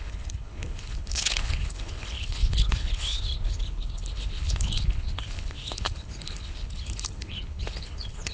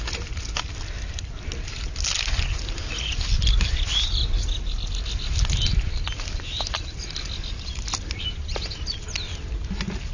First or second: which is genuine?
second